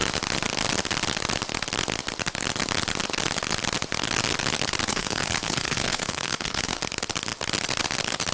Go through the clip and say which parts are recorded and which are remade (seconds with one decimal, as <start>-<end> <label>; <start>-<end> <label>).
0.0-4.9 recorded; 4.9-6.8 remade; 6.8-8.3 recorded